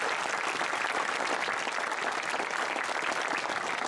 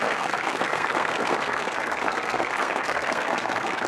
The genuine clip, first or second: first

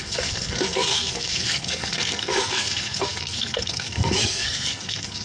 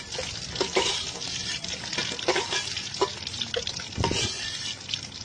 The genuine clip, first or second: second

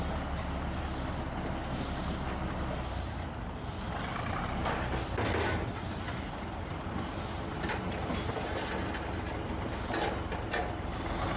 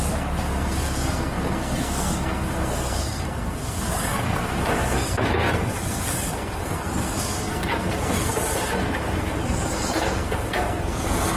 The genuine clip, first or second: first